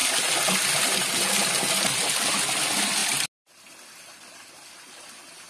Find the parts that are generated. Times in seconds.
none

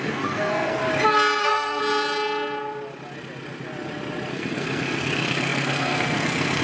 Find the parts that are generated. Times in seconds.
0.0-0.8; 1.4-1.8; 4.3-6.6

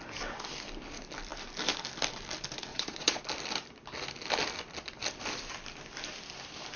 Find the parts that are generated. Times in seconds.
2.7-3.2

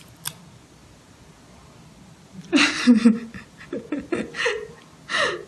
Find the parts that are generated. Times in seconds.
none

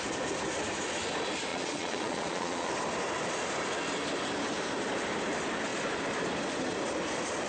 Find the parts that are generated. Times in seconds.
1.5-2.7

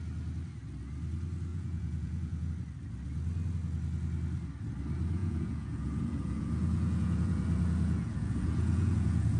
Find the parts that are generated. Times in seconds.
1.5-2.5; 5.2-9.4